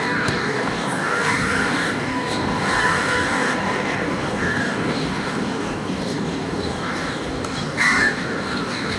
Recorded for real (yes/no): no